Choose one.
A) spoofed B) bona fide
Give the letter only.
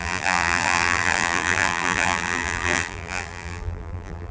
A